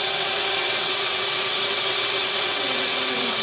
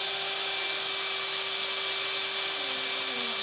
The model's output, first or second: first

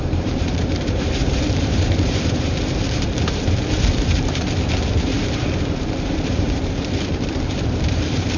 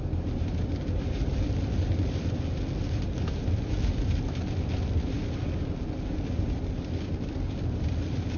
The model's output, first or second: first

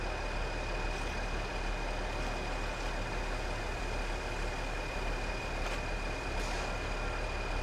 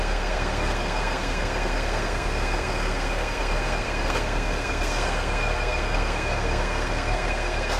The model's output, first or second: second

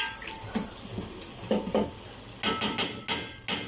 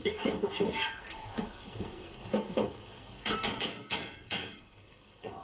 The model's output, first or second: second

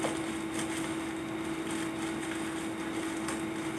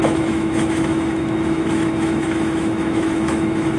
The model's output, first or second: second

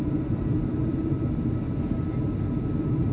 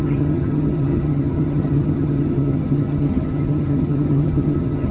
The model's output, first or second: second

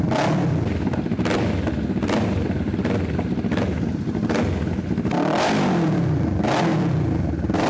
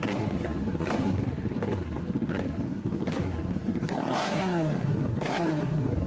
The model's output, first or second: second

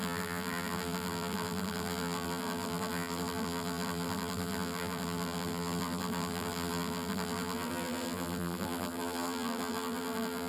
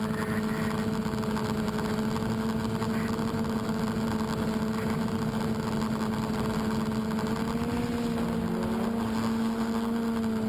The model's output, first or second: first